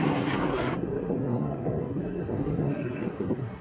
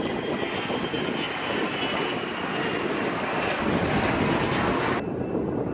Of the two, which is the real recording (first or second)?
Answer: second